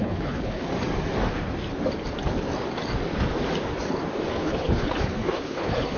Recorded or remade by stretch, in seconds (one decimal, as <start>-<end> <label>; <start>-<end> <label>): 0.0-0.7 remade; 0.7-4.3 recorded; 4.3-6.0 remade